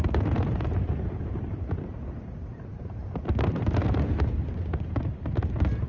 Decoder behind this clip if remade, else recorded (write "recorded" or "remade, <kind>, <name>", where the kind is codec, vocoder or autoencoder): remade, vocoder, BigVGAN v2